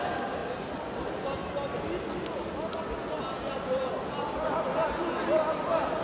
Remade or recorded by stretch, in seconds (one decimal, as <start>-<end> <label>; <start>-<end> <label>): 0.0-6.0 recorded